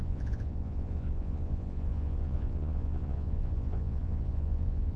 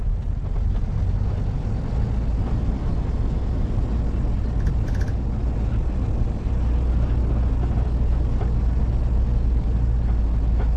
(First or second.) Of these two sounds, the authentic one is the second